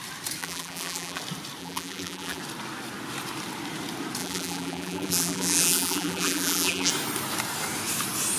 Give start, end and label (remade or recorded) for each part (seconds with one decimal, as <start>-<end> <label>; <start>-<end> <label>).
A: 0.0-0.4 recorded; 0.4-1.2 remade; 1.2-1.6 recorded; 1.6-2.4 remade; 2.4-4.2 recorded; 4.2-6.9 remade; 6.9-8.4 recorded

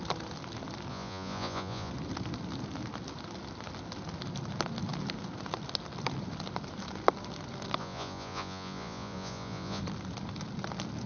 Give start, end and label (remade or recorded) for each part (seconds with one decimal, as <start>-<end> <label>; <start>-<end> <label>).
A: 0.0-0.9 recorded; 0.9-1.9 remade; 1.9-7.8 recorded; 7.8-9.8 remade; 9.8-11.1 recorded